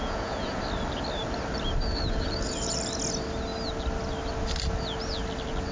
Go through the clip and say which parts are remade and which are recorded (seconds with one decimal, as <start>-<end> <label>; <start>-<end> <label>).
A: 0.0-0.6 remade; 0.6-5.7 recorded